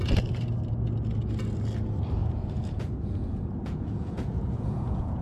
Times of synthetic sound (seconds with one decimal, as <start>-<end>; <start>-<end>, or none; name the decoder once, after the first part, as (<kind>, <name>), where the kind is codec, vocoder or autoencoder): 2.2-5.2 (vocoder, Vocos)